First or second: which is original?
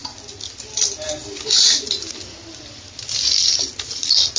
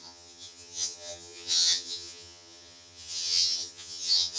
first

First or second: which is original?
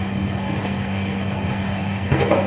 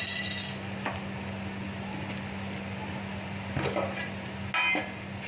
second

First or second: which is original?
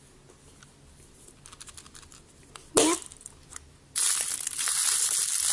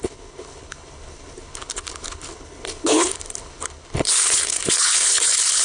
first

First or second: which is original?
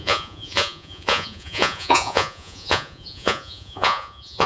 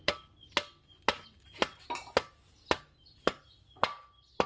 second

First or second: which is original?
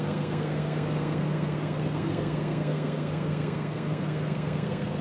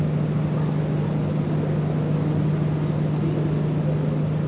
second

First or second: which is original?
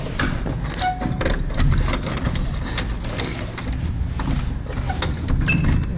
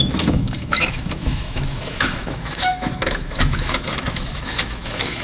first